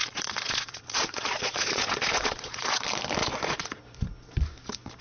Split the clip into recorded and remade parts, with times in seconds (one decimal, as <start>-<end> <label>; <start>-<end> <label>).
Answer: 0.0-2.8 remade; 2.8-3.2 recorded; 3.2-3.8 remade; 3.8-5.0 recorded